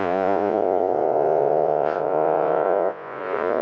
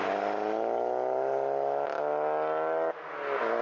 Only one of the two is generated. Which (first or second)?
first